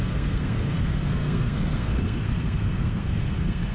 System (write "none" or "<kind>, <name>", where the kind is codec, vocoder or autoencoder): codec, SNAC